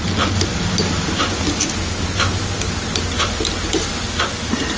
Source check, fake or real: real